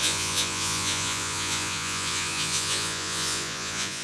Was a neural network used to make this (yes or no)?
yes